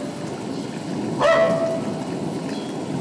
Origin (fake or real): real